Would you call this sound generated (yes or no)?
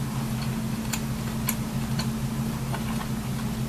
no